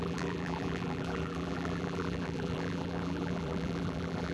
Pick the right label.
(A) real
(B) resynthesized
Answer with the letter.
B